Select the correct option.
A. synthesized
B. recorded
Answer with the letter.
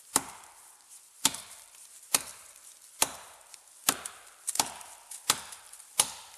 B